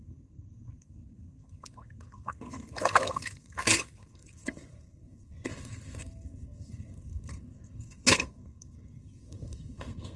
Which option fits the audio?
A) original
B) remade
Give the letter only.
B